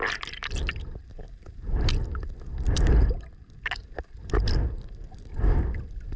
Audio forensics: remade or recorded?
remade